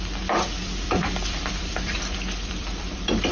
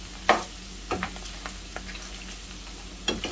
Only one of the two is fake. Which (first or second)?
first